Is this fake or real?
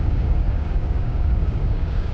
fake